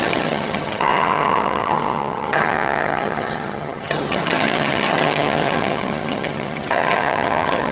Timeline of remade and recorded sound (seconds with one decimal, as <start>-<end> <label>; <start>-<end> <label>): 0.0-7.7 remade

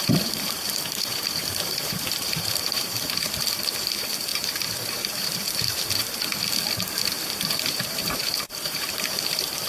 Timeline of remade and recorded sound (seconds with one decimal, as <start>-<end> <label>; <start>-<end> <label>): 0.0-6.3 remade; 6.3-7.2 recorded; 7.2-9.7 remade

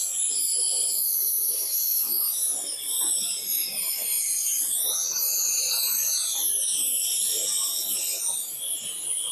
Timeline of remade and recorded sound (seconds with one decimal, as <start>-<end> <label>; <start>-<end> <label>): 0.0-0.7 recorded; 0.7-1.5 remade; 1.5-3.7 recorded; 3.7-4.8 remade; 4.8-9.3 recorded

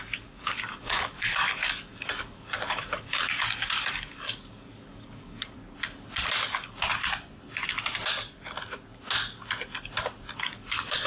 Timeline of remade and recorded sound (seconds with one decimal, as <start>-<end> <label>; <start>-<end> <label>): 0.0-5.6 remade; 5.6-10.4 recorded; 10.4-11.1 remade

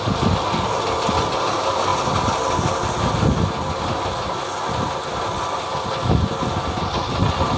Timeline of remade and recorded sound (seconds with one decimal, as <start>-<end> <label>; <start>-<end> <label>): 0.0-7.6 recorded

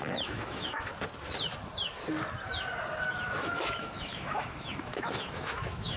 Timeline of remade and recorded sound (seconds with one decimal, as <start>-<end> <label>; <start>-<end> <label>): 0.0-0.9 remade; 0.9-3.1 recorded; 3.1-6.0 remade

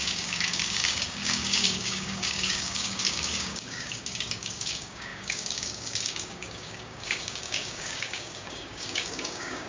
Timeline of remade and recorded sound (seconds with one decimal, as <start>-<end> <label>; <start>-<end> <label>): 0.0-9.7 remade